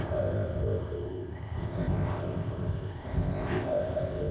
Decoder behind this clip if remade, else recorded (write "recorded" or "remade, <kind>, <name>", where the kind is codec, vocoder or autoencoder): remade, codec, ZipCodec